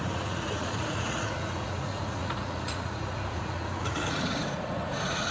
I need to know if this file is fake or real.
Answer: fake